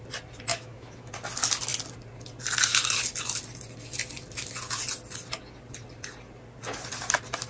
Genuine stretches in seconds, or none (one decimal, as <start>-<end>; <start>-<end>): 0.0-0.5; 1.1-7.5